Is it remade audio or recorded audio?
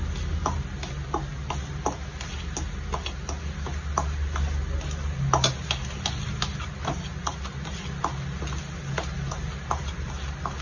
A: recorded